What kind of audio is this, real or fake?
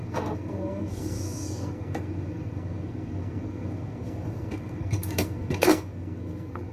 fake